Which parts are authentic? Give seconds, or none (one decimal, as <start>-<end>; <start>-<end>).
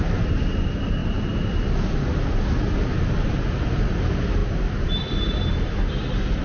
0.0-4.4; 5.1-6.4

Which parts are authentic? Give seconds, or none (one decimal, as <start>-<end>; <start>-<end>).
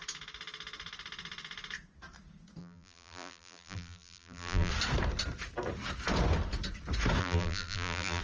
0.0-2.6; 4.7-7.2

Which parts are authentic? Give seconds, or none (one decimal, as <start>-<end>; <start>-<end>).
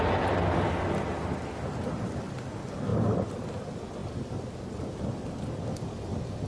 0.0-2.9; 3.5-4.0; 5.5-6.5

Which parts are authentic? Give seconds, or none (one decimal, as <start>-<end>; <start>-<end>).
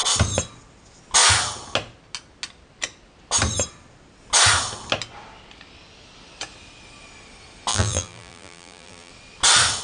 0.0-7.7; 9.1-9.8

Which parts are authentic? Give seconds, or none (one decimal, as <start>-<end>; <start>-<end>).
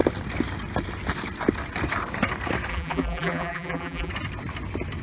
0.0-2.7; 4.1-5.0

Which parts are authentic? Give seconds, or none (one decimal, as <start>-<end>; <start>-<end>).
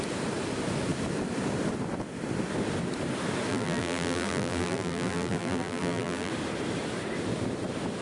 0.0-3.5; 6.3-8.0